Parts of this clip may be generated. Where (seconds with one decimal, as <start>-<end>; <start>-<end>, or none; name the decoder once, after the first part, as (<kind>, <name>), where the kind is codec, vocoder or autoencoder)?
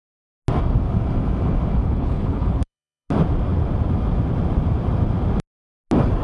1.8-3.1 (codec, HILCodec)